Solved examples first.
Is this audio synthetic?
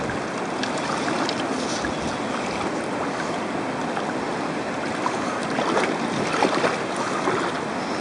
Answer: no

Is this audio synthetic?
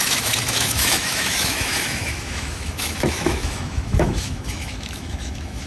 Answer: yes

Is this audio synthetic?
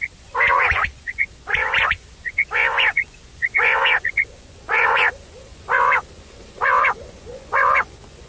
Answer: yes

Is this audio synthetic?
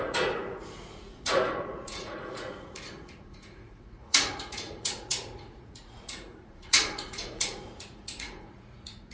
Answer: yes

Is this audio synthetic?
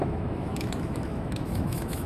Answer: yes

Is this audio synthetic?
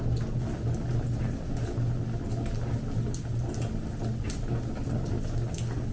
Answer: no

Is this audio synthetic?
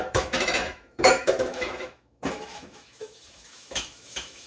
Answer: yes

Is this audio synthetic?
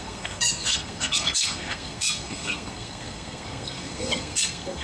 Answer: yes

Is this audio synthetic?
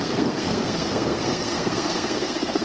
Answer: yes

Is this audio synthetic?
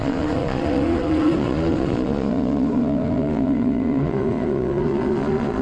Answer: yes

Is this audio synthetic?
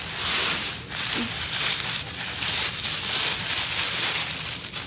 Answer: no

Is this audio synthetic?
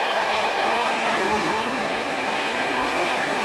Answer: yes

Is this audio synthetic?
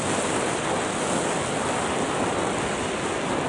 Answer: no